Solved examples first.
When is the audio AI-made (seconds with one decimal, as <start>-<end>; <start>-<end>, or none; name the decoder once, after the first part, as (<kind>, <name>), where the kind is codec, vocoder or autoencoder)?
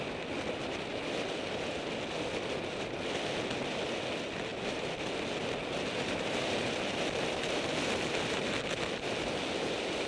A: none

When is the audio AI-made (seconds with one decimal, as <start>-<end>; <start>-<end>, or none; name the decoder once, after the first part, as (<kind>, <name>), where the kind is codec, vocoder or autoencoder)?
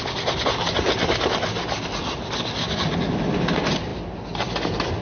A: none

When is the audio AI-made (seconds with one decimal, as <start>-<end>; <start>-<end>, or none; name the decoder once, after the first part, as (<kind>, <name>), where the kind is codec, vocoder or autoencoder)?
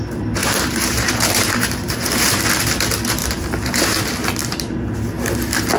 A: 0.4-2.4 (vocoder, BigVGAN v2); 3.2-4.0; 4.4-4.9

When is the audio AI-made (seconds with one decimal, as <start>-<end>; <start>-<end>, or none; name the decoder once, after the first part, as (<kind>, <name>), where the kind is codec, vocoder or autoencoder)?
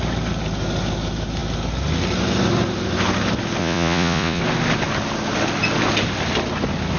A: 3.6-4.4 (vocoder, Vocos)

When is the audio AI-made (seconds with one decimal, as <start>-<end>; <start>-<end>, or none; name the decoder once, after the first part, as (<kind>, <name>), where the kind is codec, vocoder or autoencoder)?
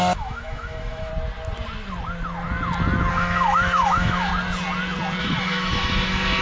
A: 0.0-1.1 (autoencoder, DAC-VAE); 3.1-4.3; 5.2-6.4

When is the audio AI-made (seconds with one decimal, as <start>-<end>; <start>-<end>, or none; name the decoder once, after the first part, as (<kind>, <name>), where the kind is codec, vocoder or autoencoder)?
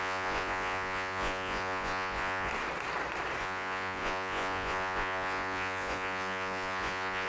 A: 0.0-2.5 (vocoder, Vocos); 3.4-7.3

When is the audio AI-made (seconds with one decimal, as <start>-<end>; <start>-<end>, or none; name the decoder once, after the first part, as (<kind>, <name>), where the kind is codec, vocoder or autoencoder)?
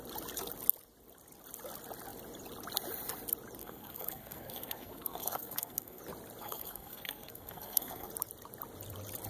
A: 3.6-6.0 (codec, SNAC); 6.4-8.1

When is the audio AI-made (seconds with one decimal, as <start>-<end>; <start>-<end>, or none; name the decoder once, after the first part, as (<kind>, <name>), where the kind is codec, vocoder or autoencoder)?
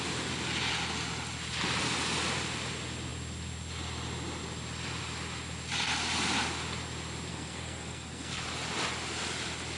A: 7.3-8.4 (codec, SNAC)